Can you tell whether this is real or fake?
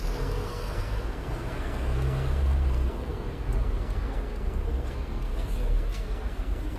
fake